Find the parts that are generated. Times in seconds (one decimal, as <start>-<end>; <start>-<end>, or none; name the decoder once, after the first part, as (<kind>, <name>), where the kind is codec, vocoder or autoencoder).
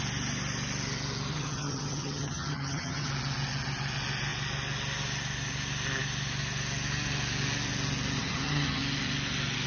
1.3-3.1 (vocoder, HiFi-GAN); 8.2-8.8